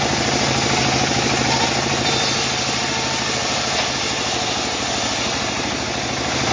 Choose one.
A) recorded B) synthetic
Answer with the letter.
A